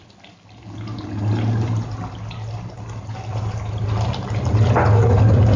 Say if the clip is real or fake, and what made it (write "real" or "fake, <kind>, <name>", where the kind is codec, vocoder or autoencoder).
real